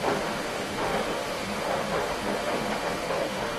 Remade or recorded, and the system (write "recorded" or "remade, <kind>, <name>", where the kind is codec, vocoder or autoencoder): remade, autoencoder, DAC-VAE